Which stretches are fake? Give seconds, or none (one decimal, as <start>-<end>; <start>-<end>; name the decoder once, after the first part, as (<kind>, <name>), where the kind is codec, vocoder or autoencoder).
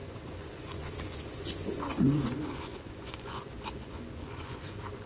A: 0.0-5.1 (vocoder, Vocos)